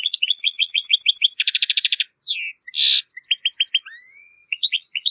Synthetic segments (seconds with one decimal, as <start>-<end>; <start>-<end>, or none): 0.0-0.9; 4.0-5.1